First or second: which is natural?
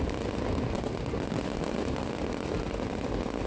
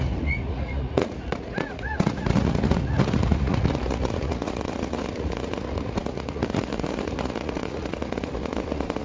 first